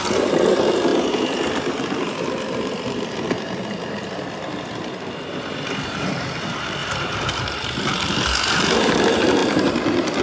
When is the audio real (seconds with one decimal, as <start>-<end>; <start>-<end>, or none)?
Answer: 0.9-1.7; 6.8-8.8